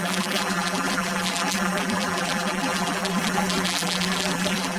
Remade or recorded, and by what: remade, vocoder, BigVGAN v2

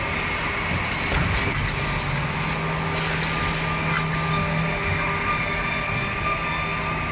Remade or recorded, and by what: recorded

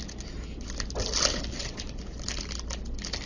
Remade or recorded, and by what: recorded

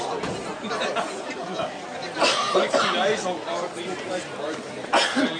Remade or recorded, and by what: recorded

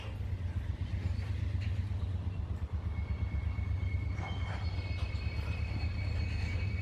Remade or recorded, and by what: recorded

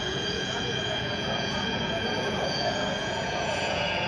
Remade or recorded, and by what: remade, vocoder, Vocos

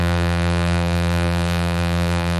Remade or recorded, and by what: remade, vocoder, BigVGAN v2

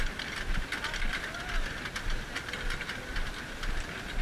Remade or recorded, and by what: recorded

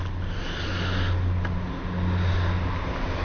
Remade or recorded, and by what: recorded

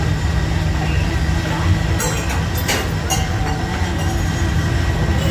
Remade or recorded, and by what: recorded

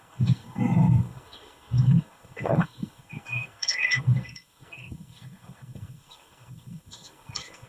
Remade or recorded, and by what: remade, codec, SNAC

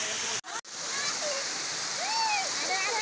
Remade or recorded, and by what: recorded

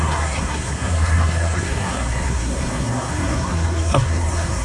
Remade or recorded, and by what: remade, codec, SNAC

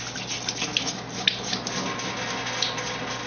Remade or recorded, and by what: recorded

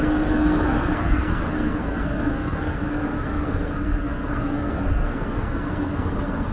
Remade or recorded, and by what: remade, codec, SNAC